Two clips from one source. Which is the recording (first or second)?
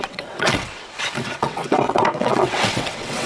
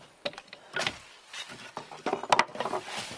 second